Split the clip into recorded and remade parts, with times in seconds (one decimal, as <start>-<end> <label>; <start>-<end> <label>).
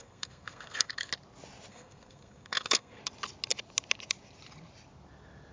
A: 0.0-1.1 remade; 1.1-1.7 recorded; 1.7-3.0 remade; 3.0-5.5 recorded